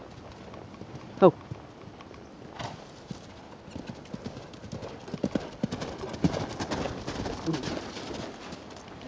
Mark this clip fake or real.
real